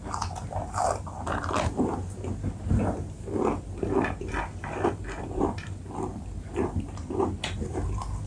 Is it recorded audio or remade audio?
recorded